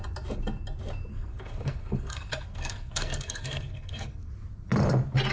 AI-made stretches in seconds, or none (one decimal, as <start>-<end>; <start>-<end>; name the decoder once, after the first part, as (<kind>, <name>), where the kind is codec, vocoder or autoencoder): 1.1-4.3 (codec, SNAC)